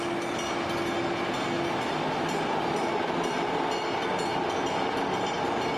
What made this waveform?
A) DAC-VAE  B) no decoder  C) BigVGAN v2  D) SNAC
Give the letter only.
B